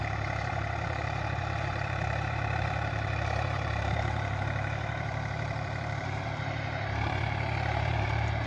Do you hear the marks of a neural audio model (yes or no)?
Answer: yes